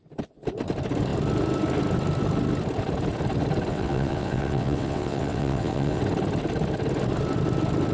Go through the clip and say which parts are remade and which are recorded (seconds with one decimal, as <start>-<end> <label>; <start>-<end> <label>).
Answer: 0.0-3.7 recorded; 3.7-6.0 remade; 6.0-7.9 recorded